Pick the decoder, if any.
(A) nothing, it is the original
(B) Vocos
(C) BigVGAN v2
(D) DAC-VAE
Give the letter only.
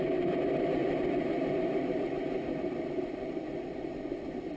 A